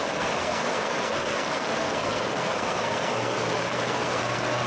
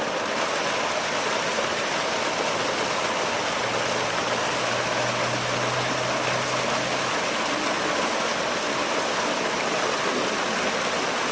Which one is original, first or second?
second